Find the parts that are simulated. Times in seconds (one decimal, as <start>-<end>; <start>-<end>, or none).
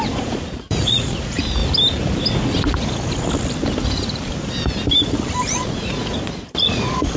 0.0-1.6; 5.4-7.2